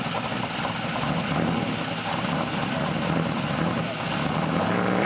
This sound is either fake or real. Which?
real